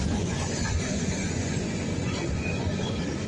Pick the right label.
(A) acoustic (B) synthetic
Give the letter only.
B